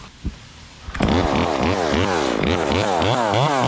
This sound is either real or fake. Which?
real